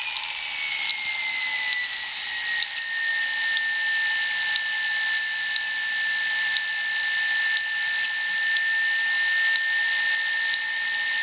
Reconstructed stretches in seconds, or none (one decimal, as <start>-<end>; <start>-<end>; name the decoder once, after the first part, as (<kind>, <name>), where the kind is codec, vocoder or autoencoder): none